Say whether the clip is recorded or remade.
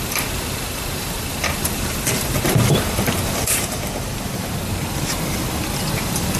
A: remade